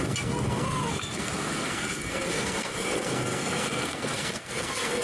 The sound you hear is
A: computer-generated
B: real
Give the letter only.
A